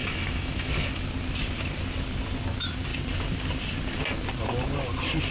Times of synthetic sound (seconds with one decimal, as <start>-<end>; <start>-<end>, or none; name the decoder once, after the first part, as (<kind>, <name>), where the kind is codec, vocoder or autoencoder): 0.0-0.7 (autoencoder, DAC-VAE)